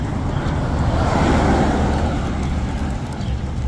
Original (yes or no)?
yes